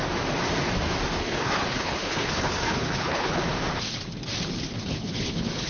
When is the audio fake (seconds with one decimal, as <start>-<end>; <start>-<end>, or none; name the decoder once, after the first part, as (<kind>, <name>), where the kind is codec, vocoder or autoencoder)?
1.2-3.4 (codec, HILCodec); 4.8-5.7